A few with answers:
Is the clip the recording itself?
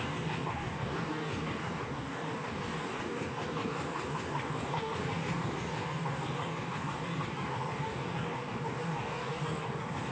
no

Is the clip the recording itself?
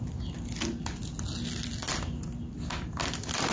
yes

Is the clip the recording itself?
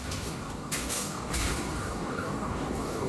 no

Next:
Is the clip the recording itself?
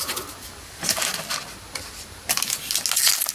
yes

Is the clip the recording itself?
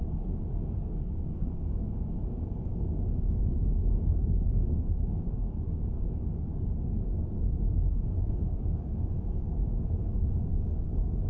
no